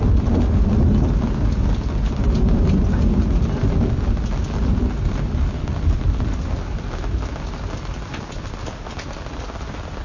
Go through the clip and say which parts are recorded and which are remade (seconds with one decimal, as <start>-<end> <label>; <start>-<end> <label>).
0.0-5.6 recorded; 5.6-6.5 remade; 6.5-10.0 recorded